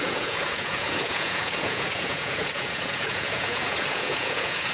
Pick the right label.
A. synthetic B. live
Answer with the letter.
A